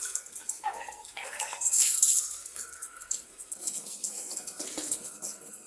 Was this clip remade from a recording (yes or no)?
yes